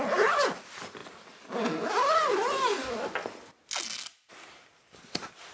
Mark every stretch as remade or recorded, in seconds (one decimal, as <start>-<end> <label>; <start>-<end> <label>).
0.0-5.5 recorded